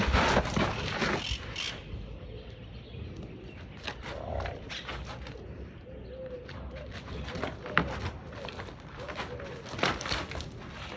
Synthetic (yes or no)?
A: no